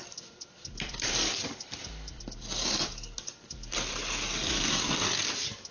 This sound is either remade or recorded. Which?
remade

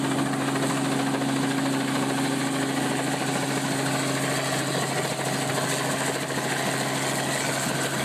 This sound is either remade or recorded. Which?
recorded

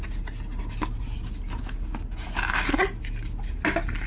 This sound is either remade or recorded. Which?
recorded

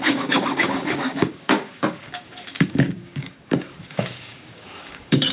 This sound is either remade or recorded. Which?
remade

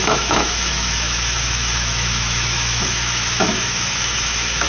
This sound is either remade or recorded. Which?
remade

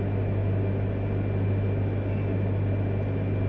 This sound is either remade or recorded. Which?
recorded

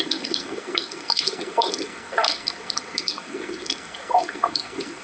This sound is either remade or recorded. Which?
remade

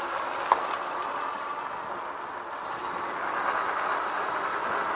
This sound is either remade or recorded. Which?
recorded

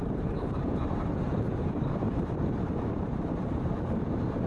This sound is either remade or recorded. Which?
remade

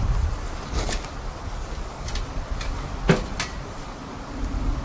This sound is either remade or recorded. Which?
recorded